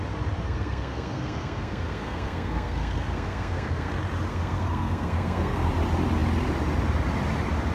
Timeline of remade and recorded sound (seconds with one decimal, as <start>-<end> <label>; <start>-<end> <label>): 0.0-0.4 recorded; 0.4-3.9 remade; 3.9-4.3 recorded; 4.3-5.7 remade; 5.7-7.7 recorded